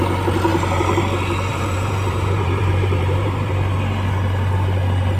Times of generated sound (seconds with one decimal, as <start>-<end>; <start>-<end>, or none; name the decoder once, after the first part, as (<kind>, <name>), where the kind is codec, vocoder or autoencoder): 0.5-1.0 (vocoder, BigVGAN v2); 1.5-3.5